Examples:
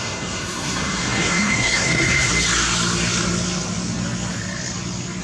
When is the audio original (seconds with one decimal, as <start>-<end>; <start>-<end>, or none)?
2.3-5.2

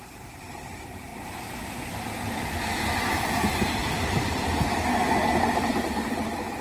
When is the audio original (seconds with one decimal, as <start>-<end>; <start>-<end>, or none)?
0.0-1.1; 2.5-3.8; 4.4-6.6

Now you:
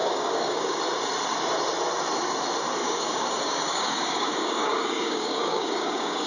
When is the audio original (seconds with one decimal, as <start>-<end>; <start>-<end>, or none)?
0.8-2.8

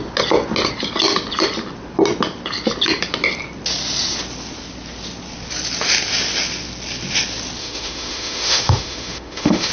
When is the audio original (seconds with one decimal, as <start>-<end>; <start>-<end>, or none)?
0.0-7.6